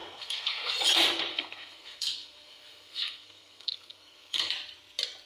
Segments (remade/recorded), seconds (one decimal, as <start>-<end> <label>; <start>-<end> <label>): 0.0-0.7 remade; 0.7-1.3 recorded; 1.3-4.5 remade; 4.5-5.3 recorded